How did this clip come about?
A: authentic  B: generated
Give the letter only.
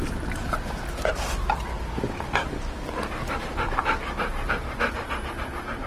A